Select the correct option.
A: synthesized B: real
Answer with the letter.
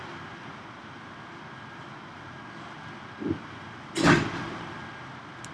B